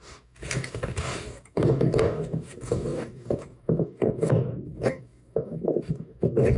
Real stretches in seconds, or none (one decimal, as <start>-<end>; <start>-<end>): none